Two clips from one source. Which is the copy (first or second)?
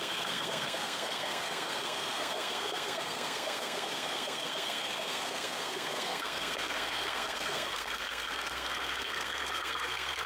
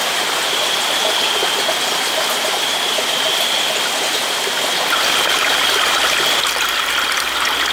first